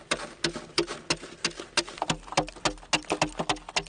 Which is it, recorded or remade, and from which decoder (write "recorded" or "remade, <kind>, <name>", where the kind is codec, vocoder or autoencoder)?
recorded